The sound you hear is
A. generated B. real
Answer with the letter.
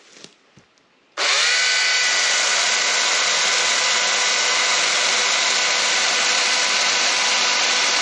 B